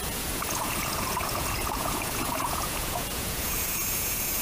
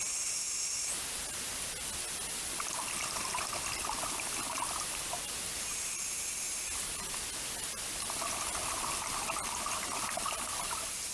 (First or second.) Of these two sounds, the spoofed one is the first